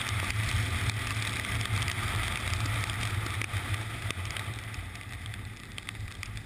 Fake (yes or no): no